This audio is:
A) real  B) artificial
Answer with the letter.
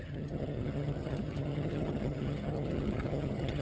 B